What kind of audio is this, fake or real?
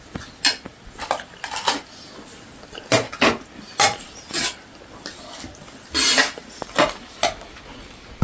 real